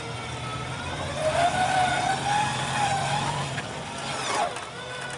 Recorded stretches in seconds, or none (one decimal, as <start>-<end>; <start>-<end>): 0.0-0.5; 3.6-5.2